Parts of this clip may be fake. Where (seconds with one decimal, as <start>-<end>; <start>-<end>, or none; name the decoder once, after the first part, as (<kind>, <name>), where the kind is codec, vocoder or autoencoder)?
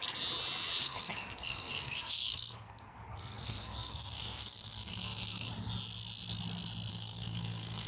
0.8-5.5 (codec, SNAC); 6.9-7.9